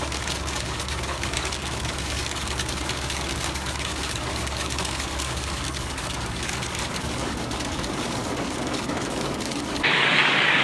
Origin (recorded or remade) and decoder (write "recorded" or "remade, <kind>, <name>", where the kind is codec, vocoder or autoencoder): remade, codec, DAC